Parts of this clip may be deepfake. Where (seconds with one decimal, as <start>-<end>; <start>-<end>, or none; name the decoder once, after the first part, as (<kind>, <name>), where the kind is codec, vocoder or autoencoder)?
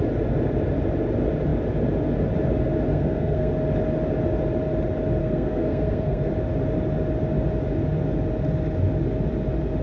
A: 2.9-3.5 (codec, SNAC); 5.2-6.3